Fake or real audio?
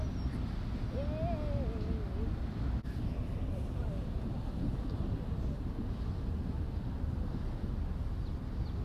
real